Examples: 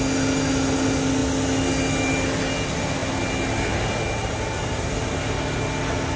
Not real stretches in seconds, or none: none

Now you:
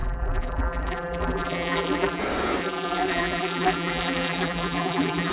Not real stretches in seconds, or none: 0.0-2.2 (vocoder, BigVGAN v2); 2.6-5.3

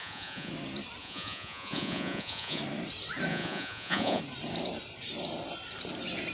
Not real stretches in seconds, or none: 0.0-0.5 (vocoder, Vocos); 1.0-2.6; 3.3-4.2

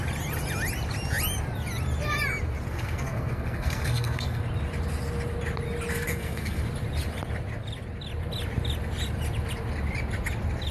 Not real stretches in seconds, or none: 2.7-4.4 (codec, SNAC); 5.9-6.6

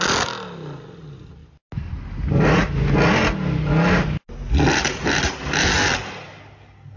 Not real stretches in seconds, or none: none